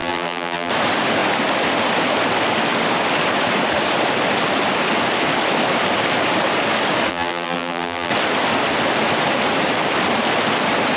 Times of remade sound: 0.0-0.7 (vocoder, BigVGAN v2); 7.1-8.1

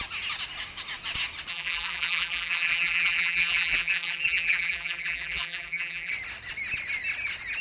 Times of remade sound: 1.5-6.1 (vocoder, BigVGAN v2)

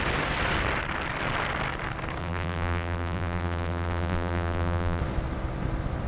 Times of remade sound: 2.2-5.0 (vocoder, BigVGAN v2)